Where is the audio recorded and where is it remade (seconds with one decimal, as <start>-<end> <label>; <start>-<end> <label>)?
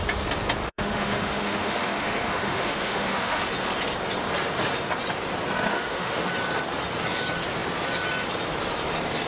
0.0-0.6 recorded; 0.6-3.4 remade; 3.4-5.7 recorded; 5.7-6.3 remade; 6.3-9.3 recorded